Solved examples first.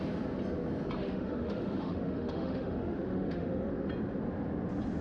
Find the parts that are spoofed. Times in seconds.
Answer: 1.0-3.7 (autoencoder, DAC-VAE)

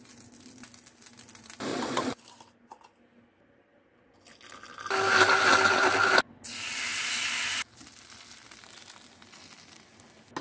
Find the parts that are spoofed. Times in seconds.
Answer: 1.7-2.2 (vocoder, Vocos)

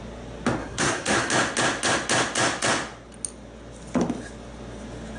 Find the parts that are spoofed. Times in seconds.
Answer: 0.6-1.3 (codec, SNAC)

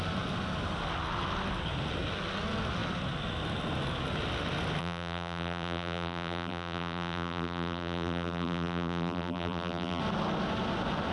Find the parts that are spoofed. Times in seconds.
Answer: 4.8-10.0 (vocoder, BigVGAN v2)

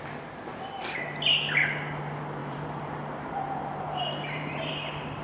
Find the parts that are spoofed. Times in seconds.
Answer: 2.4-4.7 (vocoder, BigVGAN v2)